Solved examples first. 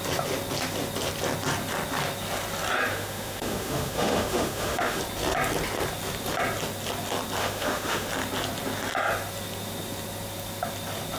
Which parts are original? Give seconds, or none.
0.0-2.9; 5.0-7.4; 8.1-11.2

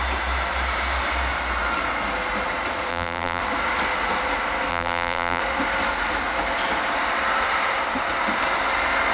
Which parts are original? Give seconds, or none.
0.0-2.9; 3.4-4.7; 5.4-9.1